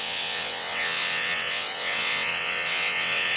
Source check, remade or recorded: remade